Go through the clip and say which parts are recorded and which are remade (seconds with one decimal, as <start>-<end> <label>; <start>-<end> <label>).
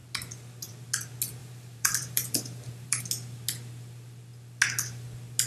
0.0-1.4 recorded; 1.4-3.0 remade; 3.0-5.5 recorded